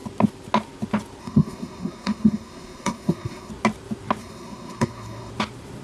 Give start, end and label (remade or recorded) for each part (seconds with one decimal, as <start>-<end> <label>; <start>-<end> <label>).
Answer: 0.0-1.2 recorded; 1.2-3.5 remade; 3.5-4.2 recorded; 4.2-5.3 remade; 5.3-5.8 recorded